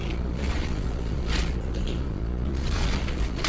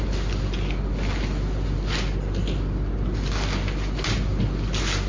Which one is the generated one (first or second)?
first